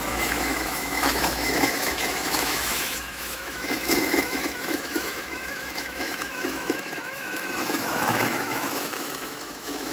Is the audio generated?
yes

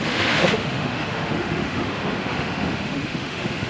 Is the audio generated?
yes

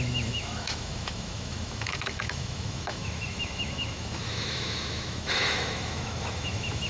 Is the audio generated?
yes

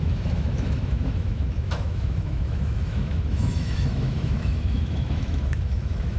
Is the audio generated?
yes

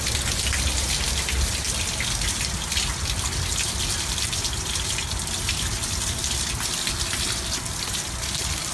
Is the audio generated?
no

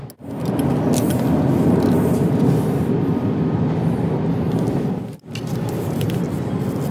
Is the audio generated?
no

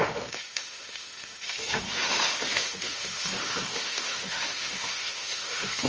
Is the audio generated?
yes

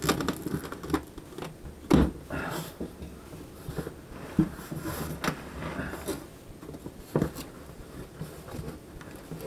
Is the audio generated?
no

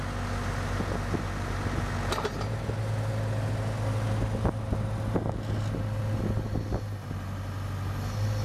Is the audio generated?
no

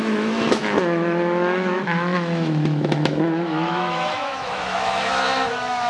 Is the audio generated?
yes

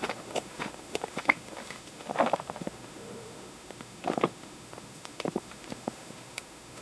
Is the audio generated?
yes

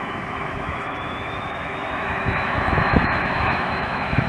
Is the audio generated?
yes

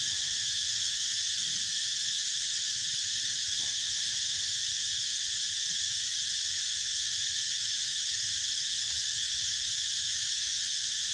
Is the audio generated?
yes